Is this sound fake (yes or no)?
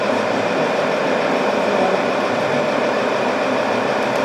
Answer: yes